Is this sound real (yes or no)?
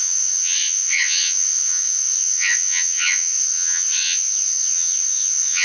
no